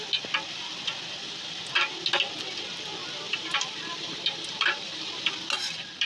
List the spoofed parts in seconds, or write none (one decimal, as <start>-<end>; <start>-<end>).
3.0-5.3